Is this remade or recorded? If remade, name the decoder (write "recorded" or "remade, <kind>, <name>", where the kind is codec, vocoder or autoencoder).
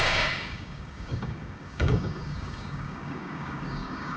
remade, codec, DAC